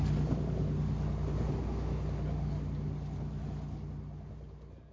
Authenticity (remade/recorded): recorded